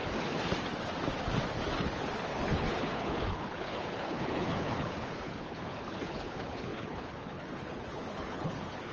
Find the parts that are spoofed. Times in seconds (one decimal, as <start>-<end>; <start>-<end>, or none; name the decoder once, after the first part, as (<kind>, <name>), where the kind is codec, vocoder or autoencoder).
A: 1.8-8.9 (codec, HILCodec)